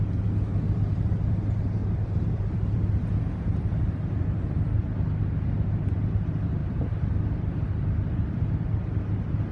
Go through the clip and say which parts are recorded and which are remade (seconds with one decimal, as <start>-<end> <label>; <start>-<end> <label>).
0.0-0.5 recorded; 0.5-1.3 remade; 1.3-1.8 recorded; 1.8-5.2 remade; 5.2-6.6 recorded; 6.6-8.7 remade; 8.7-9.5 recorded